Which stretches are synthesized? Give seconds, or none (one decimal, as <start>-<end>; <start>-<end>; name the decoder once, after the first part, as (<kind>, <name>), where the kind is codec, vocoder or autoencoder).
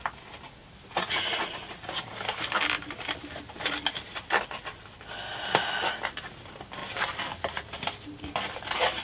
0.6-2.0 (vocoder, Vocos)